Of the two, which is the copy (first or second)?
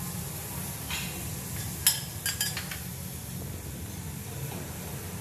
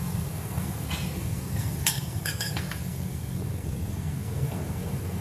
second